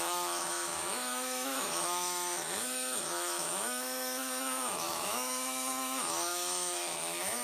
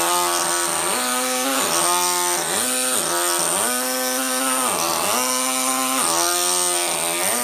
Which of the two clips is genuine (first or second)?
second